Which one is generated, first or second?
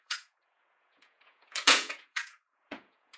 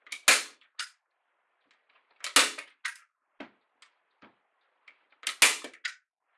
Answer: first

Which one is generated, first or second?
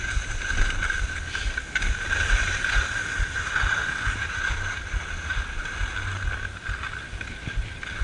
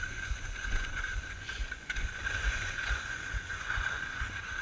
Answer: second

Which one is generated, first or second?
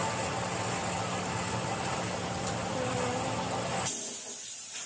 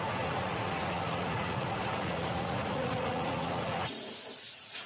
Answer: second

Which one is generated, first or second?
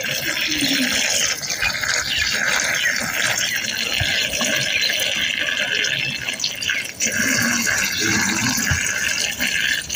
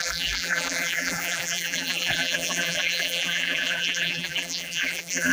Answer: second